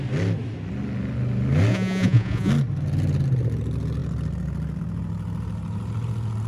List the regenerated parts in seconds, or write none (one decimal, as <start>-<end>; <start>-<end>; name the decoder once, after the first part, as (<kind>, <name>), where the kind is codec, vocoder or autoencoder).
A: 1.7-2.5 (vocoder, Vocos)